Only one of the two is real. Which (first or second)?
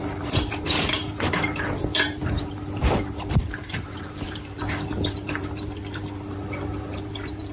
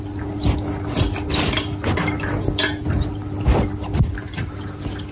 second